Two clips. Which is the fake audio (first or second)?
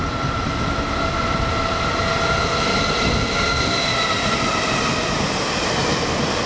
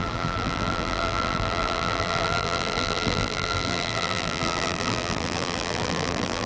second